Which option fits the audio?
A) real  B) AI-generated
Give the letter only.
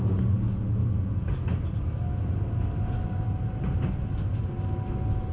A